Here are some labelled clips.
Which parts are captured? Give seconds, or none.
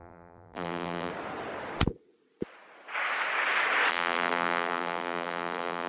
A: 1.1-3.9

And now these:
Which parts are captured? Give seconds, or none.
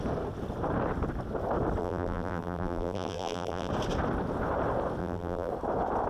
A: 0.0-1.8; 3.7-5.0; 5.5-6.1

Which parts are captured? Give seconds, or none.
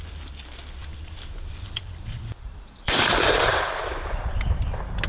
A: 0.0-0.8; 3.9-5.1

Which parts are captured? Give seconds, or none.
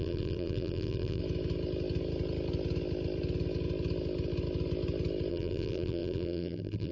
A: 1.2-5.3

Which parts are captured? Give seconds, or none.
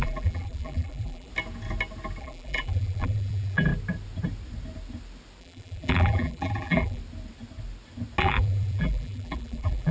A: 1.3-2.2; 3.7-5.4; 7.0-8.2